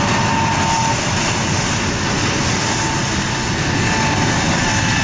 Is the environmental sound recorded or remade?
recorded